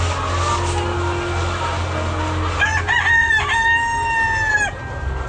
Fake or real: real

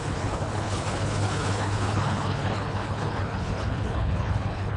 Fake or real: fake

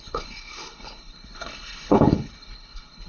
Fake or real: fake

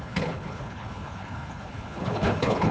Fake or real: fake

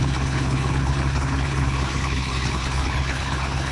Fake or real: fake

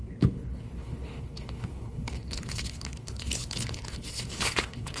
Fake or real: fake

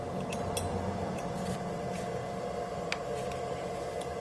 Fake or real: real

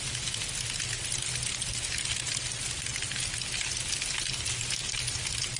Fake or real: real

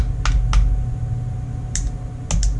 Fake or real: real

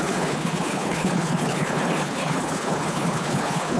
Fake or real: fake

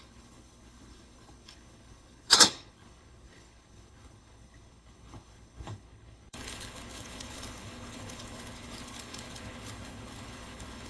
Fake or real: fake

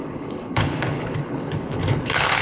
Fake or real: fake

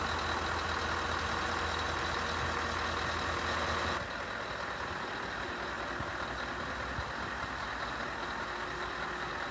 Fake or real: real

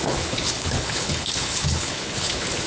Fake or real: fake